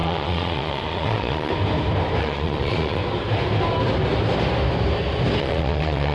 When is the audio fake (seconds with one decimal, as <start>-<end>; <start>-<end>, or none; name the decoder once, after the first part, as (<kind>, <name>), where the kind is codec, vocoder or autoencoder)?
0.0-1.5 (vocoder, Vocos); 2.2-3.0; 5.4-6.1